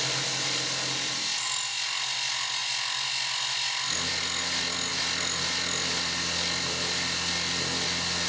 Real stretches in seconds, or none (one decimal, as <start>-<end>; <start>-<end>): 0.0-8.3